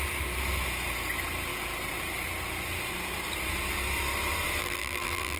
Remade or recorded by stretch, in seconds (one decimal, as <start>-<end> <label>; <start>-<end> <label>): 0.0-4.6 recorded; 4.6-5.4 remade